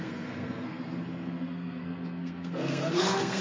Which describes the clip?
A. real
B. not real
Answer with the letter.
B